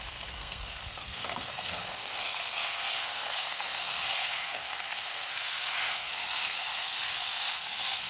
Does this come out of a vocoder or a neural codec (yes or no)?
yes